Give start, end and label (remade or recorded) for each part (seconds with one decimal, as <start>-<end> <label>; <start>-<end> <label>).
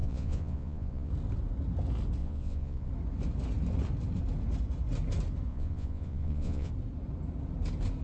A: 0.0-1.1 remade; 1.1-2.2 recorded; 2.2-2.9 remade; 2.9-5.5 recorded; 5.5-6.7 remade; 6.7-8.0 recorded